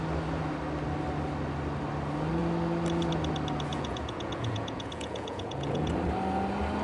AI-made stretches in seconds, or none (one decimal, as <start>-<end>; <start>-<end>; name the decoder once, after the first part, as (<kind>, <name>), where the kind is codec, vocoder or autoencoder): 3.7-5.9 (vocoder, Vocos)